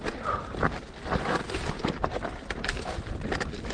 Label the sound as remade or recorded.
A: recorded